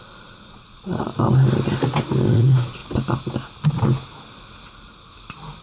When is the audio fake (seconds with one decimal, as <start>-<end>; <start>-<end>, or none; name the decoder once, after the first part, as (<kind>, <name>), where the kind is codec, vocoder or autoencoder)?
0.0-1.1 (vocoder, Vocos); 2.3-2.8